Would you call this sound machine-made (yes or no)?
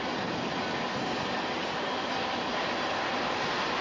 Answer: no